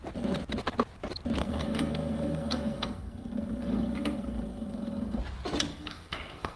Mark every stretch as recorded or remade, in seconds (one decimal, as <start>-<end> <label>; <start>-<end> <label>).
0.0-1.4 recorded; 1.4-5.2 remade; 5.2-5.7 recorded; 5.7-6.6 remade